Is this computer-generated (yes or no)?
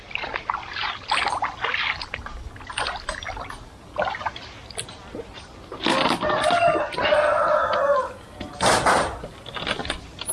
no